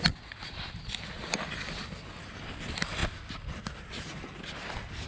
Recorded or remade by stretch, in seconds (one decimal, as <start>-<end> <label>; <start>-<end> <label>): 0.0-5.1 recorded

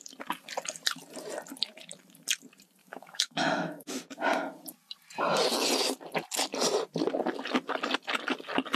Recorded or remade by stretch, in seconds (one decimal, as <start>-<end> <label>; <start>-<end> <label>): 0.0-2.8 recorded; 2.8-4.0 remade; 4.0-8.8 recorded

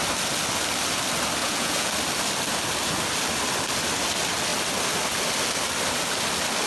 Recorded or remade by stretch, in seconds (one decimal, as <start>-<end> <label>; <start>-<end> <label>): 0.0-1.4 recorded; 1.4-1.9 remade; 1.9-6.7 recorded

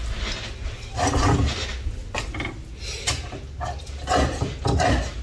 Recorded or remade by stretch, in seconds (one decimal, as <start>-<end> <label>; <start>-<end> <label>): 0.0-5.2 recorded

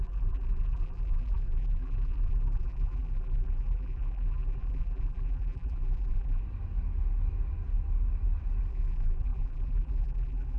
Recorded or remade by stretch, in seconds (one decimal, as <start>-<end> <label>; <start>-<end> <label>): 0.0-6.4 remade; 6.4-8.7 recorded; 8.7-10.6 remade